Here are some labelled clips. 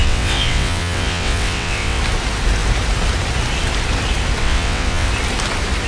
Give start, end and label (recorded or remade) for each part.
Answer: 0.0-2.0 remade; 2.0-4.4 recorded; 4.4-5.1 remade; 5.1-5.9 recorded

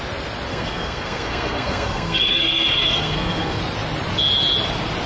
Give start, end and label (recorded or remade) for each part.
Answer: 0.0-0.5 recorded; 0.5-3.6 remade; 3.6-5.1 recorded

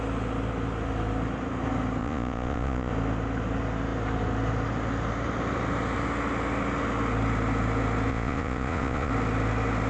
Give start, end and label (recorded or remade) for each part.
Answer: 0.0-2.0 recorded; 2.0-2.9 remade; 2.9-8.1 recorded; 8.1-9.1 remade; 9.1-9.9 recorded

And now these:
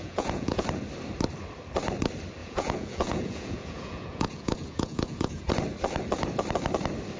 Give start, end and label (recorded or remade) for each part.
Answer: 0.0-0.6 remade; 0.6-2.4 recorded; 2.4-5.5 remade; 5.5-7.2 recorded

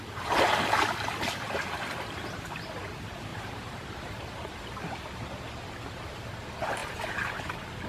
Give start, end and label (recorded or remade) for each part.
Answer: 0.0-3.3 recorded; 3.3-4.5 remade; 4.5-6.8 recorded; 6.8-7.5 remade; 7.5-7.9 recorded

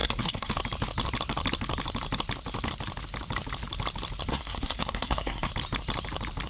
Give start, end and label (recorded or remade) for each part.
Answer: 0.0-0.5 remade; 0.5-4.3 recorded; 4.3-5.5 remade; 5.5-6.5 recorded